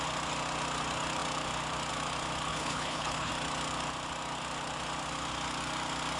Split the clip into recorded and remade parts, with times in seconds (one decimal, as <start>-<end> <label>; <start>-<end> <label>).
0.0-2.5 recorded; 2.5-3.3 remade; 3.3-6.2 recorded